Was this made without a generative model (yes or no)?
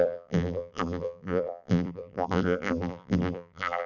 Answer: no